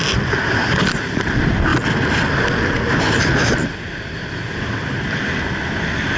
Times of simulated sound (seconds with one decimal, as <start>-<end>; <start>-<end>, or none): none